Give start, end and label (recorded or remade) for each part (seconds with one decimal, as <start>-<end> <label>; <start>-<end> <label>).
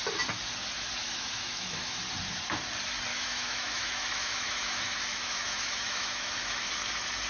0.0-1.0 recorded; 1.0-2.0 remade; 2.0-3.1 recorded; 3.1-6.7 remade; 6.7-7.3 recorded